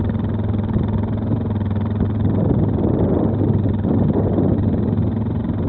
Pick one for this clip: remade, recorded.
recorded